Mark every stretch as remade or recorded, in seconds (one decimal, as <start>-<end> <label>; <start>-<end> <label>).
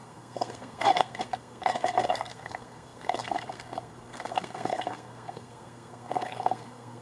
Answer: 0.0-7.0 remade